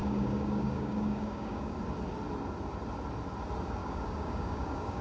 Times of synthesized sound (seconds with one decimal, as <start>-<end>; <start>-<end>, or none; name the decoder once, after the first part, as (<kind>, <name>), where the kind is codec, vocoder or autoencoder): 0.0-1.7 (codec, DAC); 3.8-5.0